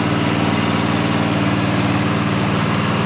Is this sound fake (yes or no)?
no